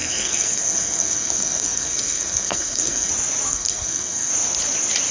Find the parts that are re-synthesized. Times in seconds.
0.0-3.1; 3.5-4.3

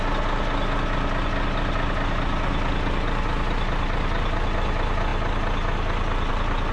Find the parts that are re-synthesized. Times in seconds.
none